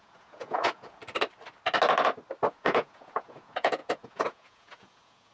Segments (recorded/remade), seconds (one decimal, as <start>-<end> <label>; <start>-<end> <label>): 0.0-1.0 remade; 1.0-2.5 recorded; 2.5-5.3 remade